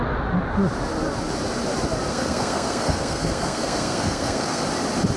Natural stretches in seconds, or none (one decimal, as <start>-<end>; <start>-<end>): 0.0-2.1; 4.6-5.2

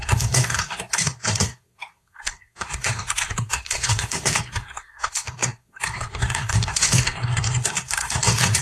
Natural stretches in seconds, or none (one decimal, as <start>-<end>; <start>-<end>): none

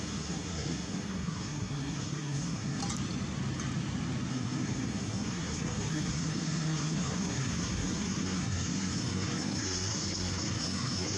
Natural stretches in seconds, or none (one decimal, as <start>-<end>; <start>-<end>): 2.8-4.3

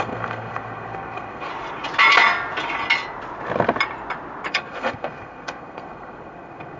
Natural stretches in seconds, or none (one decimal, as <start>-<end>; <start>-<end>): 1.5-4.5

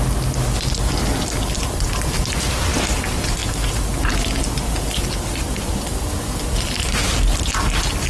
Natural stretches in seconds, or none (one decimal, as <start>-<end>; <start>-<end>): 0.0-8.1

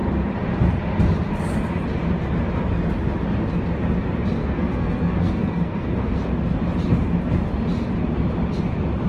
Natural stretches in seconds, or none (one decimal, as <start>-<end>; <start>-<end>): 0.0-4.4; 6.3-9.1

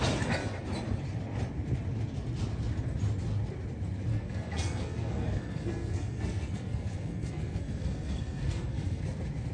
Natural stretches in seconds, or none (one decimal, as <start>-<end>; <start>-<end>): 0.0-4.1; 9.0-9.5

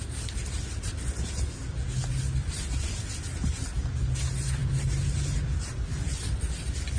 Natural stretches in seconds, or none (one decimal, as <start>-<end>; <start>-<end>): 0.0-7.0